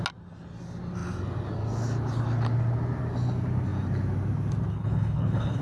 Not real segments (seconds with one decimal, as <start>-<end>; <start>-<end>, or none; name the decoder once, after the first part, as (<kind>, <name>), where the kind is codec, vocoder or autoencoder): 4.7-5.6 (codec, HILCodec)